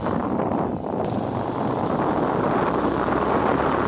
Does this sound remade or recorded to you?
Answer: recorded